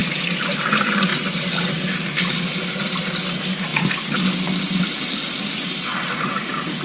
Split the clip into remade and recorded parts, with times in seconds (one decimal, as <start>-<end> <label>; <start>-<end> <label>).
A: 0.0-0.7 remade; 0.7-6.8 recorded